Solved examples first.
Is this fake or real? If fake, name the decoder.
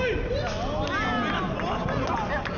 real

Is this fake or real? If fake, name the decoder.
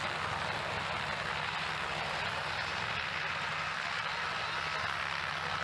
real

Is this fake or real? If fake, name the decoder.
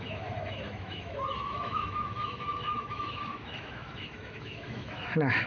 fake, autoencoder, DAC-VAE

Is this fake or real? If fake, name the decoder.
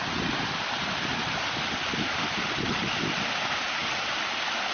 real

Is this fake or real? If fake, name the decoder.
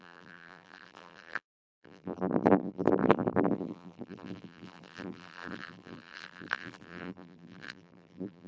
fake, vocoder, BigVGAN v2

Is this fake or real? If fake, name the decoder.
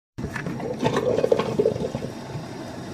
fake, vocoder, BigVGAN v2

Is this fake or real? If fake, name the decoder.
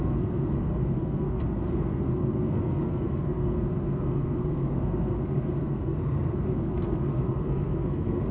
fake, codec, SNAC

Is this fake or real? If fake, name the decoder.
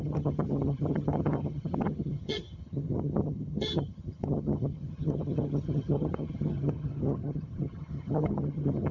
fake, vocoder, HiFi-GAN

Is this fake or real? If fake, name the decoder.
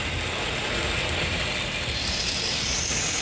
real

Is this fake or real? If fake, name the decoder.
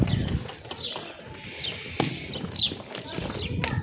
real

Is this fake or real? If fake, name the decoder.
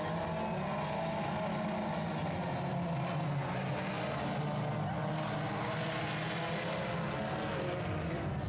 real